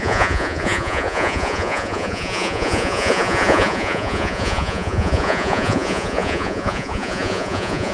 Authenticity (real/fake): fake